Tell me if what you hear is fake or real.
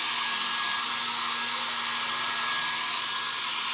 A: real